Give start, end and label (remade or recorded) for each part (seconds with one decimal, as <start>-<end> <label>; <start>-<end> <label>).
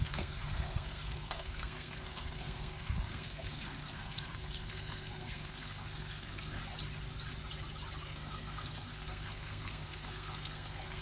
0.0-6.6 remade; 6.6-8.0 recorded; 8.0-11.0 remade